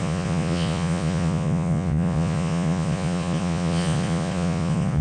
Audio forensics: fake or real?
fake